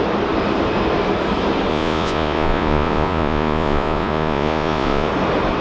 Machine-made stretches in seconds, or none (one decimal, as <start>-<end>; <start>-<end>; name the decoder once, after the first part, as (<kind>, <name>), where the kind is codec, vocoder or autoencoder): 1.7-5.1 (vocoder, Vocos)